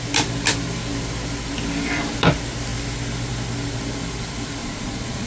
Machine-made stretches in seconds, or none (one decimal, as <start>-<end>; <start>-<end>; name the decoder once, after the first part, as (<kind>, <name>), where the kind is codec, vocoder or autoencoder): 4.6-5.3 (vocoder, Vocos)